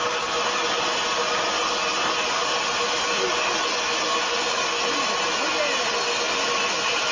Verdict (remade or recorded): recorded